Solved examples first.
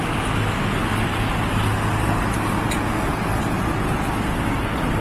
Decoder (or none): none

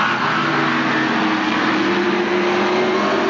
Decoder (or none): none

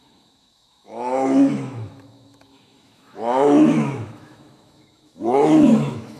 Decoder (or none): autoencoder, DAC-VAE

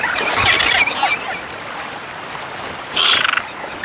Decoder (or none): none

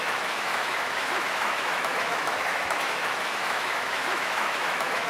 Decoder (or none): autoencoder, DAC-VAE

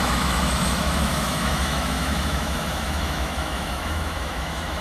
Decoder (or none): autoencoder, DAC-VAE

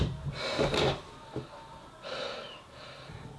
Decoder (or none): none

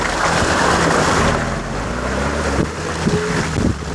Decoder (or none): none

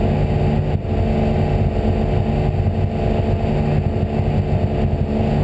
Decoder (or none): none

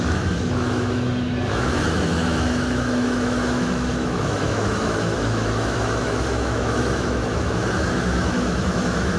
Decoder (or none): autoencoder, DAC-VAE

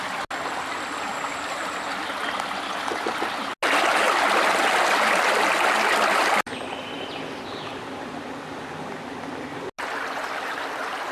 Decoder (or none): none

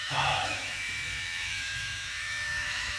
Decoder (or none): autoencoder, DAC-VAE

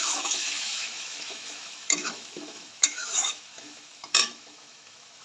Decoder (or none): autoencoder, DAC-VAE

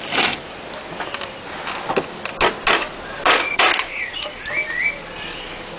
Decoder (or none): none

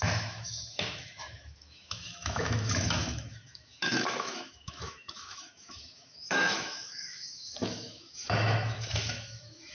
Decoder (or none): autoencoder, DAC-VAE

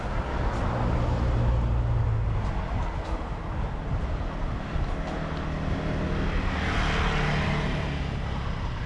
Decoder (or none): none